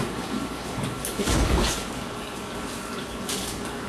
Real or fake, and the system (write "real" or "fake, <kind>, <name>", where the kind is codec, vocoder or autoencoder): fake, codec, DAC